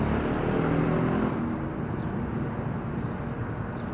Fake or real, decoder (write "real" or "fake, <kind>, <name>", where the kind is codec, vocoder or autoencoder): real